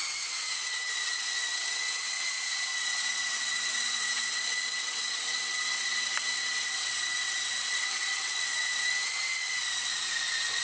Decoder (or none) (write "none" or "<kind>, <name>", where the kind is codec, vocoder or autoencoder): vocoder, WaveNeXt